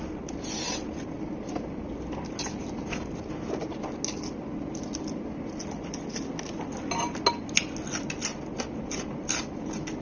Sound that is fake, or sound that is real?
real